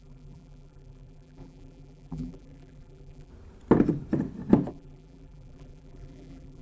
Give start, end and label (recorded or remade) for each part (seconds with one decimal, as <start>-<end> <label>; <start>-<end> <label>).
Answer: 0.0-3.3 remade; 3.3-4.7 recorded; 4.7-6.6 remade